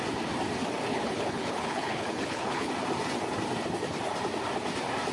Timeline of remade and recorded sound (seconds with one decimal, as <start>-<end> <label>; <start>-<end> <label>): 0.0-0.9 recorded; 0.9-2.7 remade; 2.7-5.1 recorded